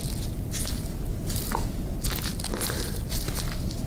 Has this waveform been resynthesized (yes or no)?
no